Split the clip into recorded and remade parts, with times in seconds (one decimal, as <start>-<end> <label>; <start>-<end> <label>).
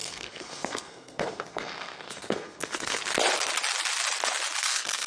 0.0-3.0 remade; 3.0-4.6 recorded; 4.6-5.1 remade